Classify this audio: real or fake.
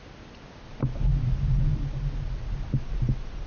real